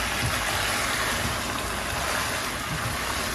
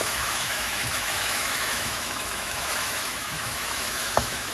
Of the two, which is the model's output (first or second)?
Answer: second